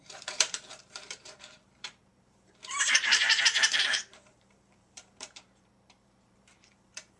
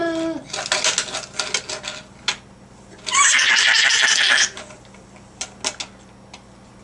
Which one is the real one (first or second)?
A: second